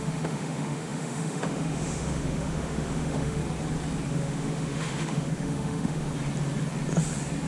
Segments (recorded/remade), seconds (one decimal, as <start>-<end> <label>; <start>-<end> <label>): 0.0-3.4 remade; 3.4-4.1 recorded; 4.1-6.1 remade; 6.1-7.5 recorded